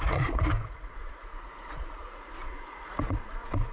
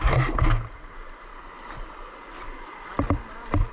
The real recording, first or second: second